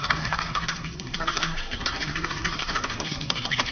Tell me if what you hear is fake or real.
fake